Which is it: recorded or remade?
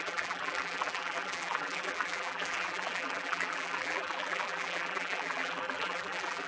remade